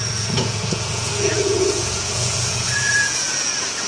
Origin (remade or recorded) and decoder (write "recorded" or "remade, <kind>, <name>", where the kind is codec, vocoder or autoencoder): remade, vocoder, Vocos